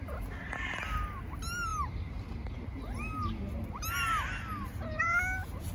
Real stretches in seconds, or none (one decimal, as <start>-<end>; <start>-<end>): 0.0-5.7

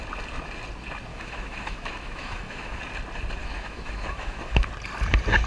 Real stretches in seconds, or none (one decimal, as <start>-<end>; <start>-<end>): 0.0-1.1; 2.8-3.4; 4.7-5.5